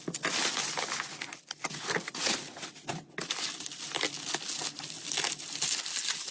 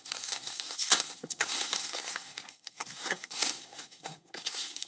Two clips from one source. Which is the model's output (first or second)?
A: second